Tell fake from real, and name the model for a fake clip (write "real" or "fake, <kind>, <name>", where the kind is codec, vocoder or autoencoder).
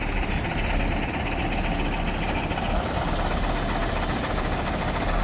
real